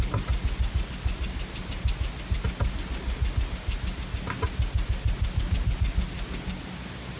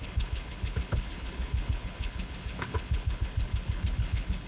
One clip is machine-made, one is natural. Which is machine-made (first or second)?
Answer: second